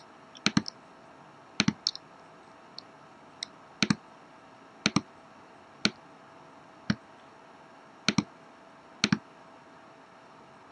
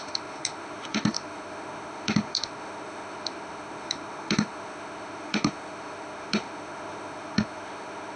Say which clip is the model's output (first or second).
second